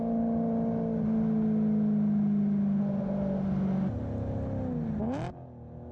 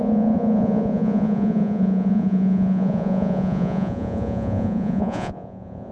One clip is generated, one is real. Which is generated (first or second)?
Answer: second